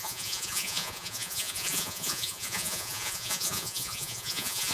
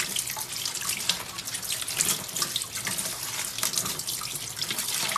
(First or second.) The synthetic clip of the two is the first